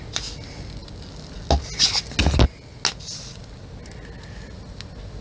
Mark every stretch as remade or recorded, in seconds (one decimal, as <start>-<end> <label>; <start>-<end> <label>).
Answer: 0.0-5.2 recorded